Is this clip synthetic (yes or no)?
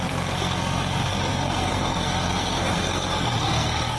yes